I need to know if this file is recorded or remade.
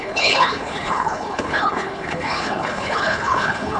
remade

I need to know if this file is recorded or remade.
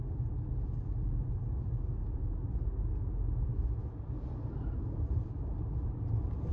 recorded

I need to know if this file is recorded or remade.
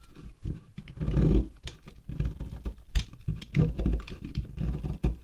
recorded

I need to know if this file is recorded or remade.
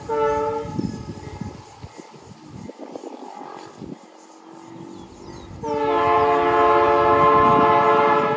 recorded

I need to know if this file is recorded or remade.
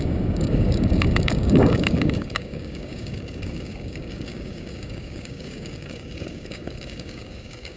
remade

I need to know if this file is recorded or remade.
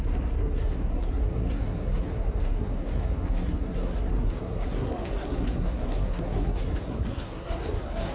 remade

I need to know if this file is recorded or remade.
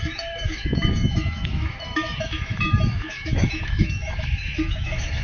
remade